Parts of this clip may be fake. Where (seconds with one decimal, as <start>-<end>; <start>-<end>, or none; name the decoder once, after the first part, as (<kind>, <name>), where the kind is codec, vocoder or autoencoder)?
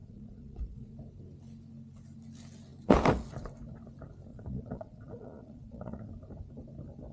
0.0-0.9 (vocoder, Vocos); 4.3-6.1